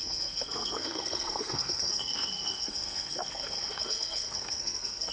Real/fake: fake